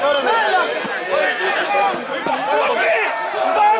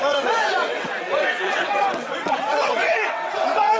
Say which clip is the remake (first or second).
second